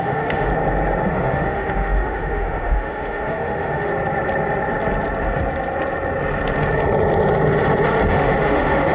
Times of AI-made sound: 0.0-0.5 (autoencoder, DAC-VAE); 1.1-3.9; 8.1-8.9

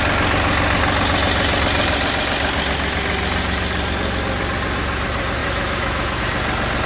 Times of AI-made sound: 5.4-6.2 (autoencoder, DAC-VAE)

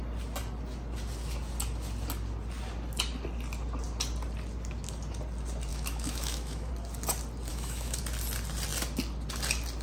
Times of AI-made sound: 5.7-6.7 (autoencoder, DAC-VAE); 7.5-8.0

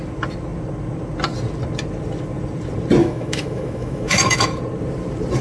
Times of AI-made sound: 3.0-4.6 (autoencoder, DAC-VAE)

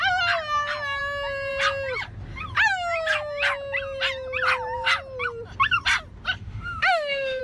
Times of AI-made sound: 6.4-7.4 (autoencoder, DAC-VAE)

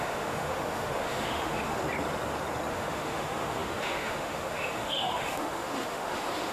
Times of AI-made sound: 0.0-1.8 (autoencoder, DAC-VAE); 2.7-6.5

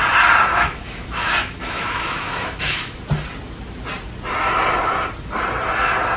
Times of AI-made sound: 0.5-3.0 (autoencoder, DAC-VAE)

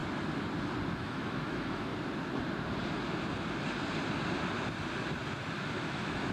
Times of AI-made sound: 0.9-1.9 (autoencoder, DAC-VAE); 5.7-6.3